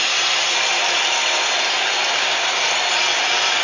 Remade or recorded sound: remade